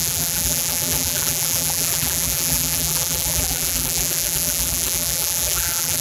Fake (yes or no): yes